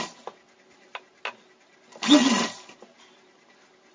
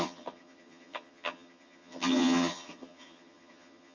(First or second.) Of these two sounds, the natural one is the first